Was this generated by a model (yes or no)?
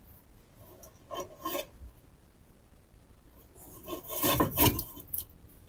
no